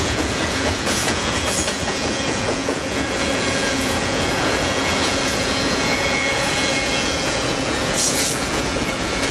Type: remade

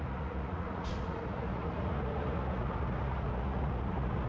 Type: remade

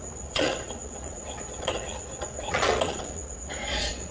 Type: remade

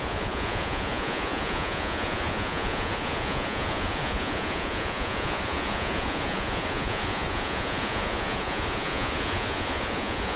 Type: remade